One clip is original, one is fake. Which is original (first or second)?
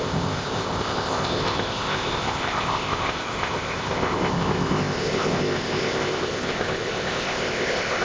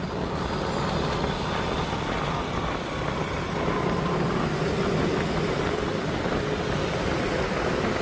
second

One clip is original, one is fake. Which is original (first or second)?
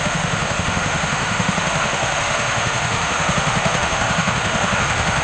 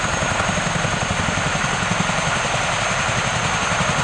second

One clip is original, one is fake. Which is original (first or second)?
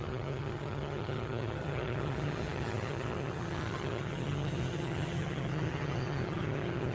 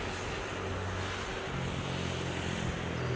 second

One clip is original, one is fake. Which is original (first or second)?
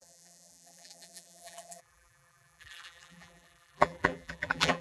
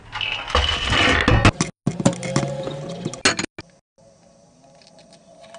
second